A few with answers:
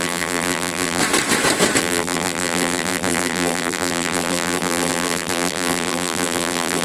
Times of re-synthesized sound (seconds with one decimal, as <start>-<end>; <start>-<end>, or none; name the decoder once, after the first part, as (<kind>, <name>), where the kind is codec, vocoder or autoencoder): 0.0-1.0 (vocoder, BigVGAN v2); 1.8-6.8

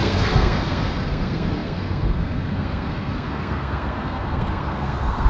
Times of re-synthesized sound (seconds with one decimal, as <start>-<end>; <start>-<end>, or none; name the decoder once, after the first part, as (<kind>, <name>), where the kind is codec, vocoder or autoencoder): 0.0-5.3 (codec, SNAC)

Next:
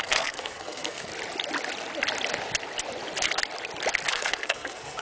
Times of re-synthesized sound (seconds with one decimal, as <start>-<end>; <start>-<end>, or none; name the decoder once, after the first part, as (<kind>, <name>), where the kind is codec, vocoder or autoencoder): 0.0-1.1 (codec, SNAC); 4.1-5.0

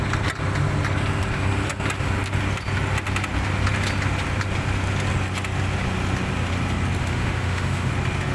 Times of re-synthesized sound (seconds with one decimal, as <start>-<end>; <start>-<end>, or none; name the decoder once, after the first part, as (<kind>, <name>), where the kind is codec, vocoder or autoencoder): 7.0-7.9 (autoencoder, DAC-VAE)

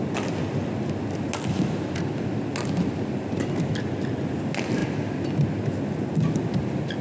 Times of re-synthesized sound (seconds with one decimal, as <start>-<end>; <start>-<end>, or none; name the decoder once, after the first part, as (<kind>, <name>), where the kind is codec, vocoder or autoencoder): none